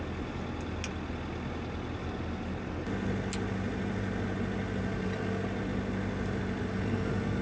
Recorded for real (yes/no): yes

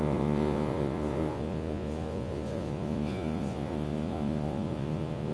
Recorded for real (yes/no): no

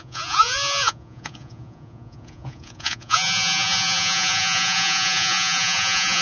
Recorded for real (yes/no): no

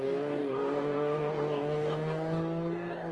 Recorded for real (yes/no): no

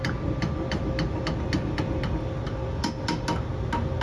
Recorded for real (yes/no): yes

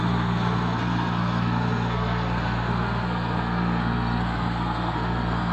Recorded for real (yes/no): no